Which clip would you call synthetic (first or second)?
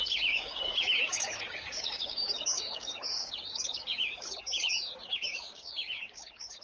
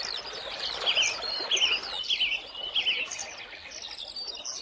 first